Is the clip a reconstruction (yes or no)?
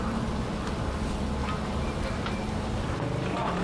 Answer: no